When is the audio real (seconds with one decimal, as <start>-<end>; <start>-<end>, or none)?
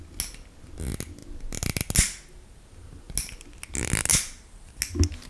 0.0-5.3